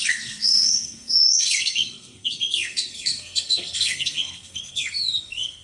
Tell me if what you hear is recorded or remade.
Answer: remade